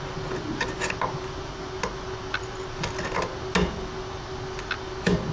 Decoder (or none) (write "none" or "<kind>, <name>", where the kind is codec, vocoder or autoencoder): none